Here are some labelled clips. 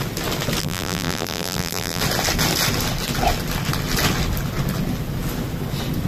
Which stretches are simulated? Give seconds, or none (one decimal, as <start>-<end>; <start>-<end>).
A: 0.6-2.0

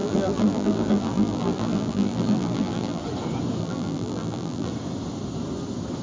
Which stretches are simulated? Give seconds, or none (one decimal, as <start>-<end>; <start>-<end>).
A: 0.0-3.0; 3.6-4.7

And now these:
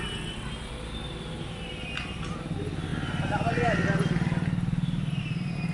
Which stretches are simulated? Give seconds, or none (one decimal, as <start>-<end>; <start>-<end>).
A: none

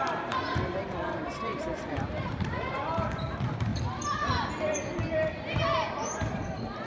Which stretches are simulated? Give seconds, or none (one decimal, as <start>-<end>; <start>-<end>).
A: 0.0-3.7; 5.5-6.9

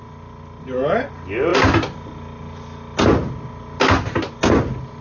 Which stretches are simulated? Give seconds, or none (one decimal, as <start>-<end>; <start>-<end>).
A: none

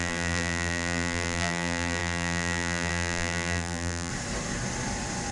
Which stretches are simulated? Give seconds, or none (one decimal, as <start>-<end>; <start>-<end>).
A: 0.0-4.1